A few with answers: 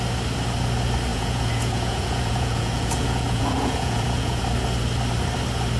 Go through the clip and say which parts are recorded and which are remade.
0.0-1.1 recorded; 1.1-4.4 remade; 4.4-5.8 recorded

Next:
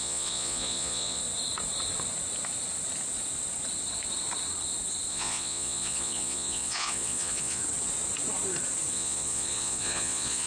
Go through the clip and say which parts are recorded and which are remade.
0.0-1.2 remade; 1.2-5.1 recorded; 5.1-7.6 remade; 7.6-8.9 recorded; 8.9-10.5 remade

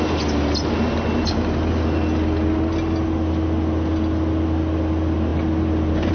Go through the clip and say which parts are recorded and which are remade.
0.0-6.1 recorded

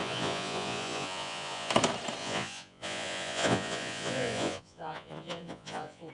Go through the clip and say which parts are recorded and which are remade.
0.0-1.7 remade; 1.7-2.2 recorded; 2.2-6.1 remade

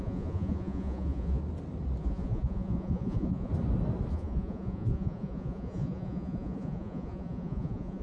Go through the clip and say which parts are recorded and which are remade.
0.0-1.4 remade; 1.4-2.0 recorded; 2.0-3.5 remade; 3.5-4.1 recorded; 4.1-8.0 remade

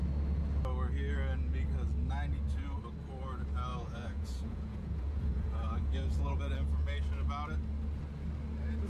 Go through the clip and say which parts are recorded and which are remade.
0.0-3.7 recorded; 3.7-6.4 remade; 6.4-8.9 recorded

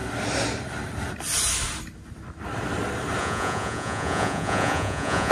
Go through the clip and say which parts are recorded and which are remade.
0.0-3.2 recorded; 3.2-5.3 remade

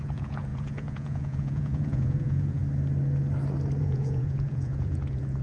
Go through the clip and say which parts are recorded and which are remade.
0.0-2.6 remade; 2.6-3.8 recorded; 3.8-5.4 remade